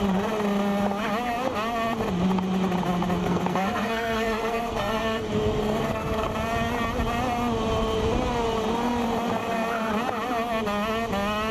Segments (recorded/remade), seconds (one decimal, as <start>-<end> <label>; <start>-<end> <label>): 0.0-3.2 recorded; 3.2-6.3 remade; 6.3-11.5 recorded